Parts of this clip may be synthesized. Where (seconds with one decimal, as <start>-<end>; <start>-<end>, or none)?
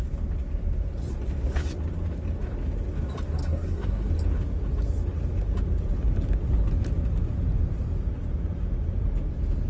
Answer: 3.4-4.1